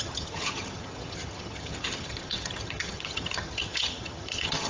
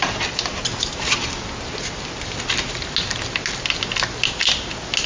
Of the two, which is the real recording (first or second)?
second